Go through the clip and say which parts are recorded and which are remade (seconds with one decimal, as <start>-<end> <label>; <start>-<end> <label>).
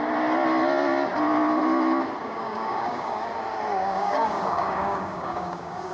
0.0-2.2 recorded; 2.2-3.3 remade; 3.3-3.7 recorded; 3.7-5.9 remade